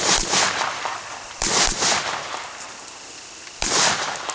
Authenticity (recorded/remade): recorded